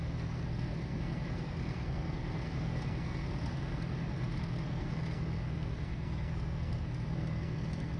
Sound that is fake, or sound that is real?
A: fake